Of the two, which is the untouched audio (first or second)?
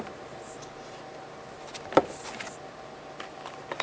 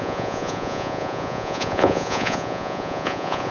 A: first